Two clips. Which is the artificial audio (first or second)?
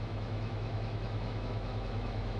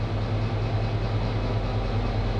first